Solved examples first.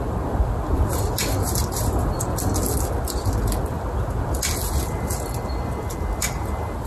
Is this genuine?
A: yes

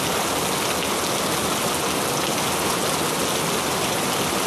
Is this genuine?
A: yes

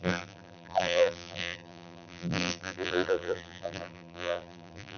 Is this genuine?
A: no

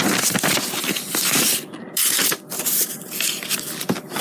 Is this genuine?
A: yes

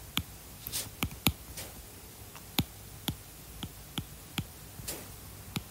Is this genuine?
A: yes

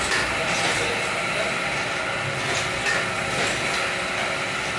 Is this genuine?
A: yes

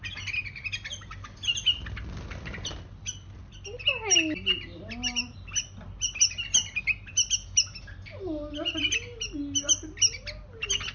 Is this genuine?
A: yes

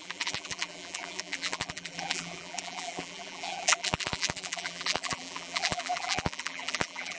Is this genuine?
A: no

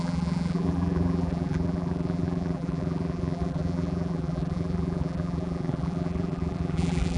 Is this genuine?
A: no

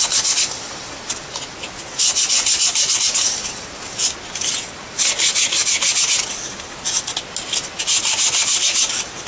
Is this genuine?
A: yes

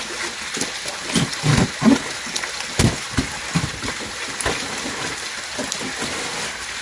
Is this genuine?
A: yes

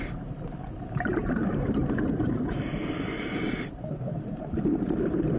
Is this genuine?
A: no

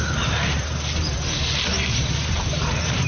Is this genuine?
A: no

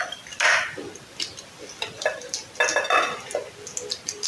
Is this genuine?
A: yes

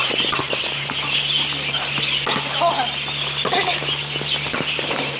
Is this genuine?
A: yes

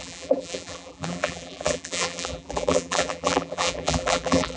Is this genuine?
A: no